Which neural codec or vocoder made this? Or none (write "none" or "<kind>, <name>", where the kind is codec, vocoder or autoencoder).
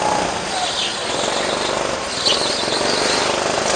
none